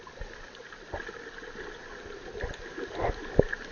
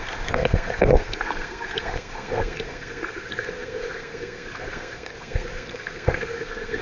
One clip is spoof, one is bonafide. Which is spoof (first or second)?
second